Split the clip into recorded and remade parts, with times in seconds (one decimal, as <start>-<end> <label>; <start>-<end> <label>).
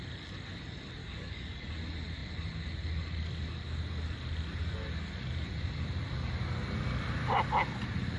0.0-1.0 recorded; 1.0-1.7 remade; 1.7-8.2 recorded